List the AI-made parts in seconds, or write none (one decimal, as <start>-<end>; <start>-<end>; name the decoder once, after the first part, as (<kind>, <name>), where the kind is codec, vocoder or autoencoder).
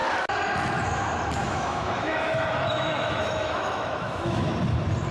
1.4-4.5 (autoencoder, DAC-VAE)